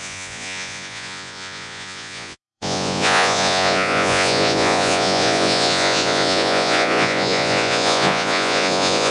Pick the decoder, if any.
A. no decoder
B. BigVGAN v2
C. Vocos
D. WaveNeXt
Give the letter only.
C